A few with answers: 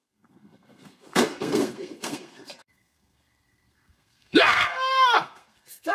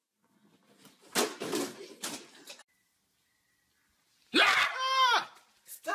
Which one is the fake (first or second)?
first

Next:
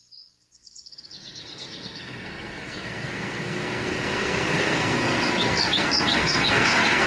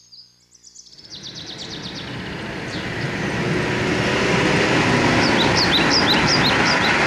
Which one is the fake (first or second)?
first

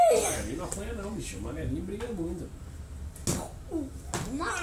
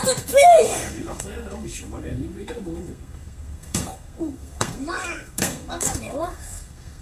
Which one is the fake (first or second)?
second